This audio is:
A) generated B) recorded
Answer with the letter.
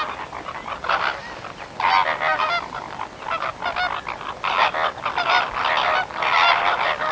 B